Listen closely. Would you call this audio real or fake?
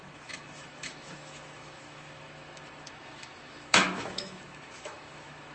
fake